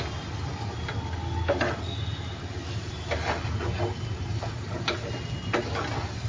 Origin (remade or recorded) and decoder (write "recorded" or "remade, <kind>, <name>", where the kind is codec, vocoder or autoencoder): recorded